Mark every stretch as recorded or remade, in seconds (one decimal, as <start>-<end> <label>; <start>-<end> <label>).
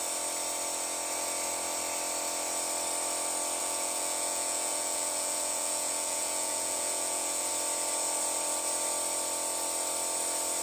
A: 0.0-3.6 recorded; 3.6-7.5 remade; 7.5-10.6 recorded